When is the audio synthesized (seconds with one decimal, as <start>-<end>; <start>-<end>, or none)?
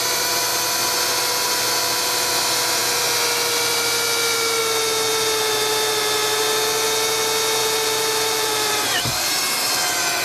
7.6-9.4